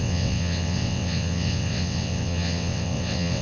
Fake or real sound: fake